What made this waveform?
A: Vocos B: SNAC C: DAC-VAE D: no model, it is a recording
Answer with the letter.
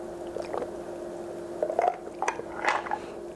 D